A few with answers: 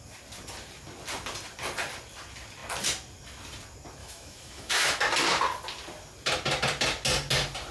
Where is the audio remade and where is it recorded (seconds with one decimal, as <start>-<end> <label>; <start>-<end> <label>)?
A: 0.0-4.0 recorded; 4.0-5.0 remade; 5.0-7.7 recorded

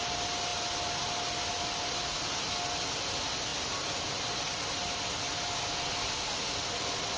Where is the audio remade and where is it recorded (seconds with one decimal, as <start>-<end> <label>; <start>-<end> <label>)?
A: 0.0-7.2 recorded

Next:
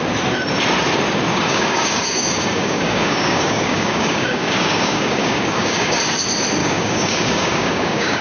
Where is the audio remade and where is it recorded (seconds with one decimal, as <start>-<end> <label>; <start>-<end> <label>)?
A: 0.0-1.3 recorded; 1.3-6.0 remade; 6.0-6.6 recorded; 6.6-8.2 remade